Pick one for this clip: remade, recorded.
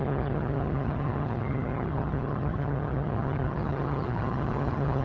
remade